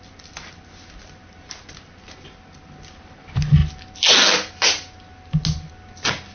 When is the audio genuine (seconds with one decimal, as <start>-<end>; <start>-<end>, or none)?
0.0-6.3